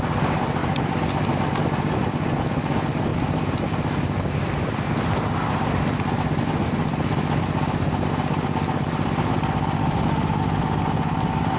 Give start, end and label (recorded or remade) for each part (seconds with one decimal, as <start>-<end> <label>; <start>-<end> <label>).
0.0-9.8 recorded; 9.8-10.4 remade; 10.4-11.6 recorded